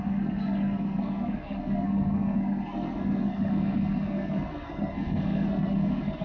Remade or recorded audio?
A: remade